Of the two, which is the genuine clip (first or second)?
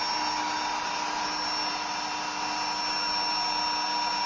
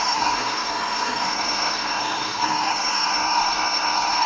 first